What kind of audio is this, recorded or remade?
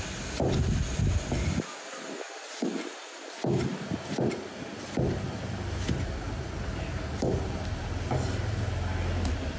recorded